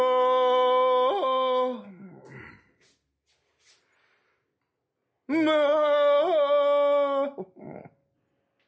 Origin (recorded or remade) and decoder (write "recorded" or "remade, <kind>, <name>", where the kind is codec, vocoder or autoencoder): recorded